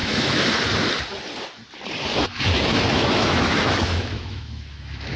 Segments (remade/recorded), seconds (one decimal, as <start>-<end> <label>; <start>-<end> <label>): 0.0-0.5 remade; 0.5-2.1 recorded; 2.1-5.2 remade